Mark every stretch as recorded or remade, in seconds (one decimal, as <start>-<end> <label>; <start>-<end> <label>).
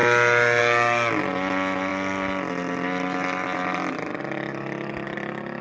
0.0-5.6 recorded